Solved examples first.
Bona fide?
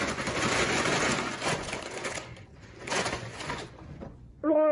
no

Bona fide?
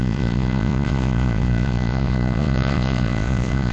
no